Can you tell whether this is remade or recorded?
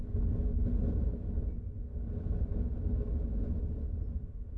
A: recorded